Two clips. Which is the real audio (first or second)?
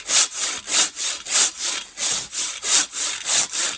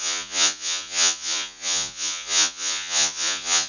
first